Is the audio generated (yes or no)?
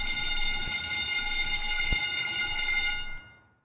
no